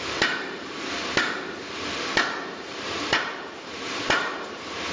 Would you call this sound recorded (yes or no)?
no